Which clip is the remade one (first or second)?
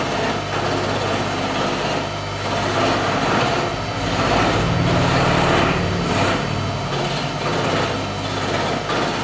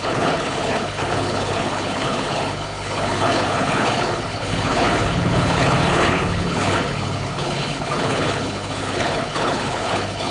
second